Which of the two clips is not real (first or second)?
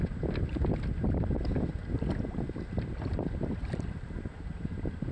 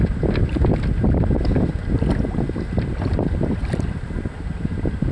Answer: first